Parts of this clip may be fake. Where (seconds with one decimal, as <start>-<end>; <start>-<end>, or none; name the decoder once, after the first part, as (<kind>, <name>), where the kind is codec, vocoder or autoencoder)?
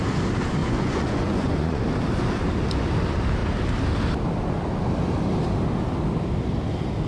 0.6-1.8 (vocoder, Vocos)